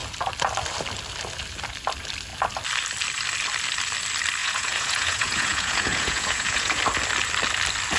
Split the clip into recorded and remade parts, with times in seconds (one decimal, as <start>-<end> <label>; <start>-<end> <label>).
0.0-4.4 recorded; 4.4-6.8 remade; 6.8-8.0 recorded